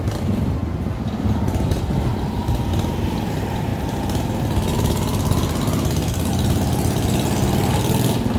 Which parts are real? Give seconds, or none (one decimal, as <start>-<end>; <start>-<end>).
0.6-1.2; 3.7-6.3